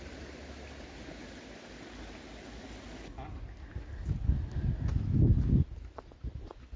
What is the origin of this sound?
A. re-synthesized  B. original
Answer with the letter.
B